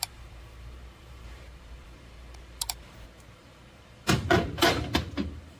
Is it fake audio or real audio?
fake